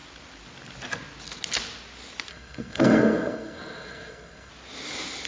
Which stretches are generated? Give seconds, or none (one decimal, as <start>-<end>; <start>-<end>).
2.3-4.5